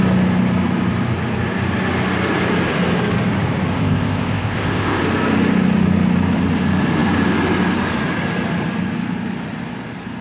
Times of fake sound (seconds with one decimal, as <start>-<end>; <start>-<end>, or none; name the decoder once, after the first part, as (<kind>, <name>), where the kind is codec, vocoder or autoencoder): 3.7-5.0 (codec, ZipCodec)